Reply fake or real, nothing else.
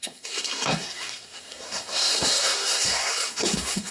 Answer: fake